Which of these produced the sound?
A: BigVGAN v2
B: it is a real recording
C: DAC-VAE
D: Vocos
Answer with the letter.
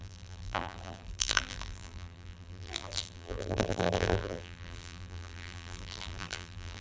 A